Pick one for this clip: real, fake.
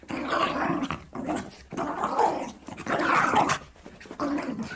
real